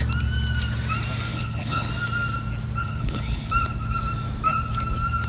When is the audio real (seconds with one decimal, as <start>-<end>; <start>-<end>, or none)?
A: 0.0-1.3; 1.9-2.8; 3.5-5.3